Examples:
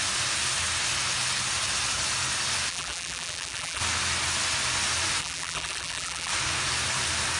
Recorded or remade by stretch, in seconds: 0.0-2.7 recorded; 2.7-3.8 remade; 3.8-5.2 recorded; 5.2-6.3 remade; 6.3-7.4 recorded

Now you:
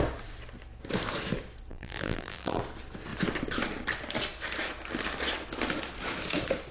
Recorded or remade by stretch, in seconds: 0.0-1.7 recorded; 1.7-2.6 remade; 2.6-6.7 recorded

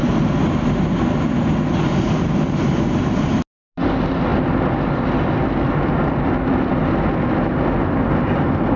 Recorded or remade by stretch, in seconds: 0.0-8.8 recorded

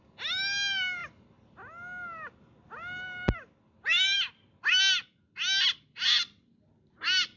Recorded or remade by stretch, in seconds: 0.0-7.4 recorded

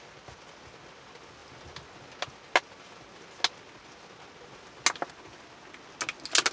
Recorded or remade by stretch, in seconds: 0.0-6.5 recorded

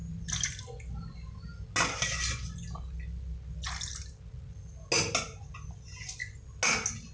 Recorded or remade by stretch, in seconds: 0.0-7.1 recorded

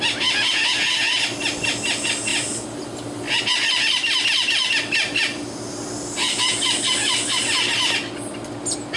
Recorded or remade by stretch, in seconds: 0.0-2.3 recorded; 2.3-3.4 remade; 3.4-9.0 recorded